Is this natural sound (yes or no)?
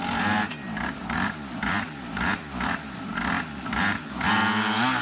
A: yes